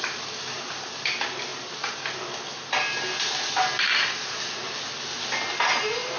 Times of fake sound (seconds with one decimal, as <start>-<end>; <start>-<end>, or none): none